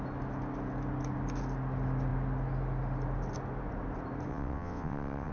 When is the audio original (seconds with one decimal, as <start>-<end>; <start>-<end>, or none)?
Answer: 0.0-4.3